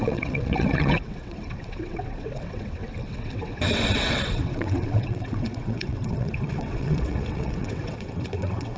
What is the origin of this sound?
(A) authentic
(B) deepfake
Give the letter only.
B